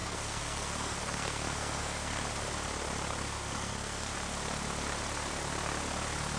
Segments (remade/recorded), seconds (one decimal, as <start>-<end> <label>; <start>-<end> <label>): 0.0-2.2 remade; 2.2-3.2 recorded; 3.2-4.1 remade; 4.1-6.4 recorded